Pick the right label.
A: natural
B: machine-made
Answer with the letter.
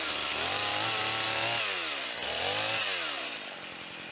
A